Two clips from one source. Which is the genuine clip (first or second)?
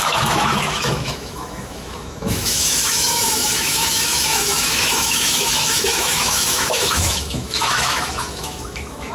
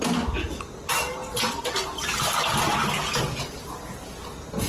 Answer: second